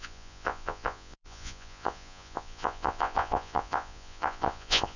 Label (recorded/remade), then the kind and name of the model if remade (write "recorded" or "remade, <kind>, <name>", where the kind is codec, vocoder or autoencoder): remade, vocoder, Vocos